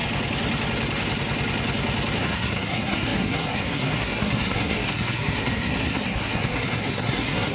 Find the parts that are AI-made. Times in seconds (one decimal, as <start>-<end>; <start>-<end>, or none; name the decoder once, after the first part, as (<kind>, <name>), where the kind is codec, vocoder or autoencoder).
2.2-7.5 (codec, SNAC)